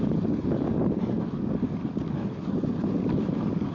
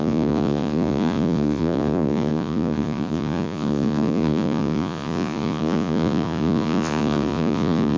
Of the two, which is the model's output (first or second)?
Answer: second